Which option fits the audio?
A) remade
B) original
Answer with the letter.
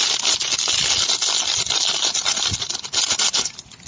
B